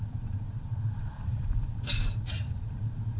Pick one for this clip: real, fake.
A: fake